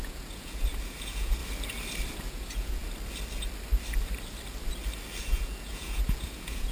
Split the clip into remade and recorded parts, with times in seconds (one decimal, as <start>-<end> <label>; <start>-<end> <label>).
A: 0.0-1.4 remade; 1.4-2.3 recorded; 2.3-2.8 remade; 2.8-5.2 recorded; 5.2-6.7 remade